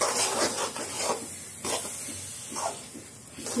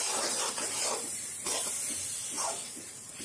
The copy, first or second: second